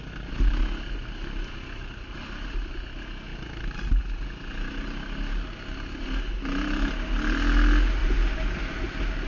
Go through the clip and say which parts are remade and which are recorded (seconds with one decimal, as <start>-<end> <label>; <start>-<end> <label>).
0.0-9.3 recorded